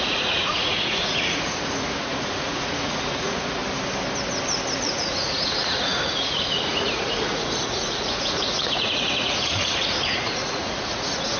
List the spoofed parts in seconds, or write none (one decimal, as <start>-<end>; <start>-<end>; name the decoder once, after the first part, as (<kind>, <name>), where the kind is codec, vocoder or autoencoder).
0.0-3.6 (vocoder, Vocos); 4.8-11.4